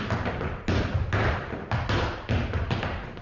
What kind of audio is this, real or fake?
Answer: real